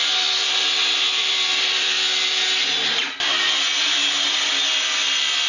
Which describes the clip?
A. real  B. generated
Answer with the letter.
A